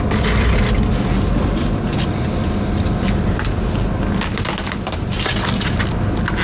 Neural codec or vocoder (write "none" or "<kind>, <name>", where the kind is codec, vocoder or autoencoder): none